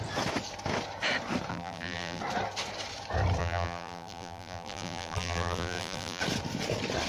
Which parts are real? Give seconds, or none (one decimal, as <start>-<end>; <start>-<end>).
0.0-1.5; 2.2-3.4; 6.2-7.1